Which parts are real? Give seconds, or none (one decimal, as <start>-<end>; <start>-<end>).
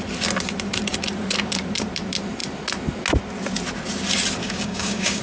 0.0-4.4